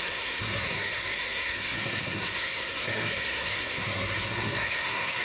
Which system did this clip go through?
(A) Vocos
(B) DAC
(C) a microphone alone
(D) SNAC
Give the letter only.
D